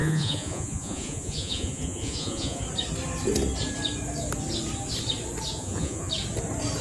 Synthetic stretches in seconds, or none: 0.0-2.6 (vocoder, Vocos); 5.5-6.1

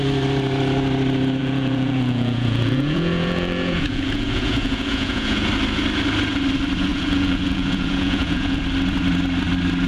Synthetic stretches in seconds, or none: 1.4-5.5 (vocoder, Vocos); 6.9-8.6

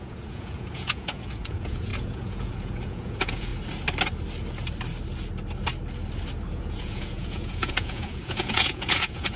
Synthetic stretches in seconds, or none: 0.0-3.5 (vocoder, Vocos); 6.5-9.4

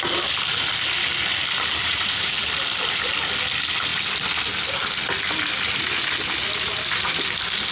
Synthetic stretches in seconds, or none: 1.8-2.3 (vocoder, Vocos)

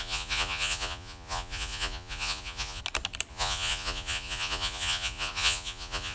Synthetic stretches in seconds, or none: 0.0-2.8 (vocoder, Vocos); 3.3-6.1